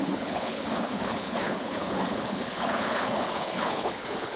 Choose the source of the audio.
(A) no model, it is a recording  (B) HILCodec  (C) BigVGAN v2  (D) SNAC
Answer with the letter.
B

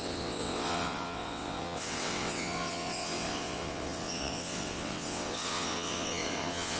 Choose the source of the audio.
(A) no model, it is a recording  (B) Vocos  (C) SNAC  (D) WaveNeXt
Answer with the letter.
D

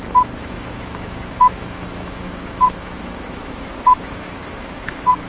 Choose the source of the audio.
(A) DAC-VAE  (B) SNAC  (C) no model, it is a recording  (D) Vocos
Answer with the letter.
A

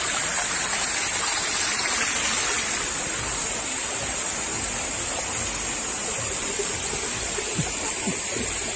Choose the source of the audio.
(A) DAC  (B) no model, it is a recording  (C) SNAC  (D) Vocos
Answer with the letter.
B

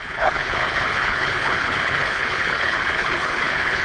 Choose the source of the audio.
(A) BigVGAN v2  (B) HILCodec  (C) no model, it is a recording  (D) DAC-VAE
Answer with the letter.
B